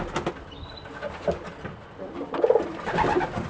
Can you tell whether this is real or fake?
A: real